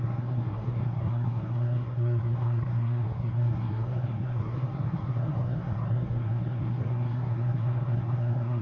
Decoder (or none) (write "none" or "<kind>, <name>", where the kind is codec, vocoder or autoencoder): codec, SNAC